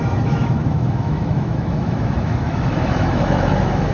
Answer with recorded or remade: remade